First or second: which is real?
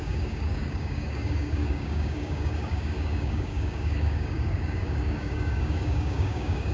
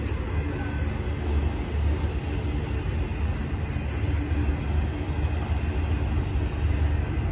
second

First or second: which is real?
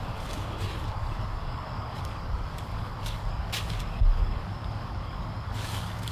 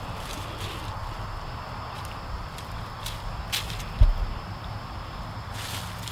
second